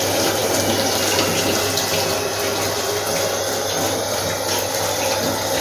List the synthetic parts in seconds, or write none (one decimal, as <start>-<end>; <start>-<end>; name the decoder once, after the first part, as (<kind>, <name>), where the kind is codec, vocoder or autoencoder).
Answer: none